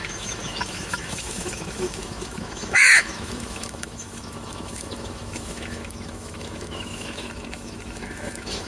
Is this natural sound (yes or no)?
no